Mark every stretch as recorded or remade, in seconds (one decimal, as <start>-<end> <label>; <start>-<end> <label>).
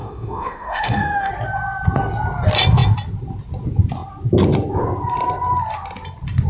0.0-1.3 remade; 1.3-6.5 recorded